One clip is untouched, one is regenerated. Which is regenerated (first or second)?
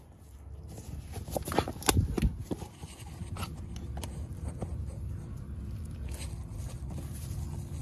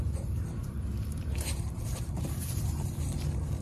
second